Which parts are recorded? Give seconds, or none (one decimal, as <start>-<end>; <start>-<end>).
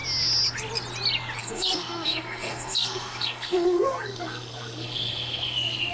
0.0-1.4